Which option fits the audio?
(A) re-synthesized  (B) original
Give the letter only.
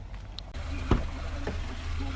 B